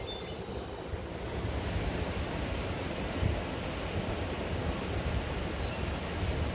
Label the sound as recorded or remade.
recorded